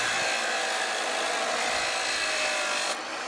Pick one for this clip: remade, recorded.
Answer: recorded